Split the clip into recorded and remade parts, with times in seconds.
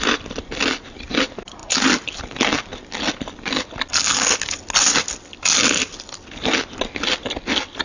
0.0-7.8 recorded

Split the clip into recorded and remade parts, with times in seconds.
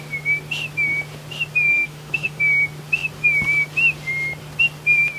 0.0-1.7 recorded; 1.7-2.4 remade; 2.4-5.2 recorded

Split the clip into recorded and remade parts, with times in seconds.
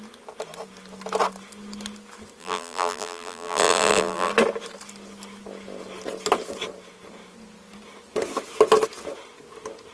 0.0-2.4 recorded; 2.4-4.3 remade; 4.3-9.9 recorded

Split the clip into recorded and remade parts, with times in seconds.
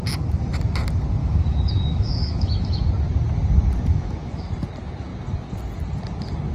0.0-1.2 recorded; 1.2-2.8 remade; 2.8-3.9 recorded; 3.9-4.4 remade; 4.4-6.5 recorded